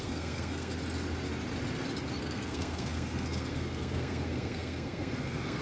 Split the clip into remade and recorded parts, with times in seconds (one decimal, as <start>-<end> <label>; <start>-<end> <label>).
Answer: 0.0-0.7 remade; 0.7-2.2 recorded; 2.2-5.6 remade